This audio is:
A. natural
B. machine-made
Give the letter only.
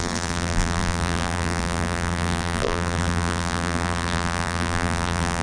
B